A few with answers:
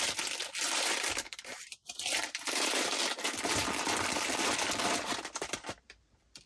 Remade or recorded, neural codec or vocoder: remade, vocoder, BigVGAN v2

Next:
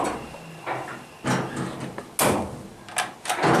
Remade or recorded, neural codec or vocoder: recorded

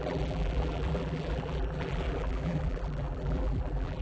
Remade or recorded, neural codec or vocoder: remade, vocoder, BigVGAN v2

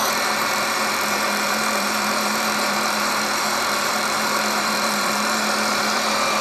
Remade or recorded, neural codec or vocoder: remade, vocoder, BigVGAN v2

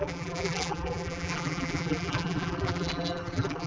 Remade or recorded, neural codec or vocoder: remade, vocoder, BigVGAN v2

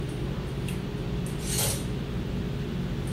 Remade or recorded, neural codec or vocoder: recorded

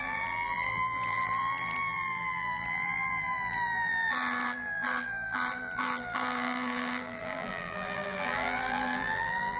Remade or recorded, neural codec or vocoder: remade, vocoder, BigVGAN v2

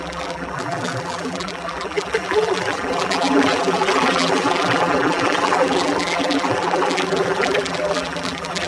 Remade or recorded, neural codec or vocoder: remade, vocoder, BigVGAN v2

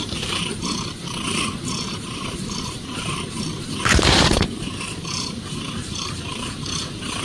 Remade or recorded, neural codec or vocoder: remade, vocoder, BigVGAN v2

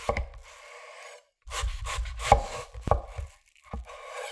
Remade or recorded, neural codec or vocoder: remade, vocoder, BigVGAN v2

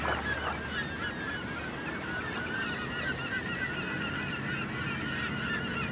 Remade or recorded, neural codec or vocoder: recorded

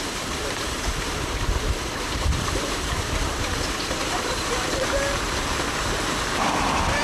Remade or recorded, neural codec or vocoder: remade, vocoder, BigVGAN v2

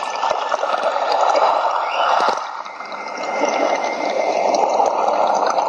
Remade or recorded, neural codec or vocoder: remade, vocoder, BigVGAN v2